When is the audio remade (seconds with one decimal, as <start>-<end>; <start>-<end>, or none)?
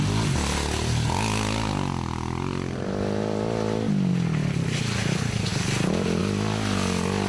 none